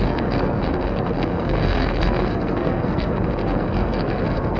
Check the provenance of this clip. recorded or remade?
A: remade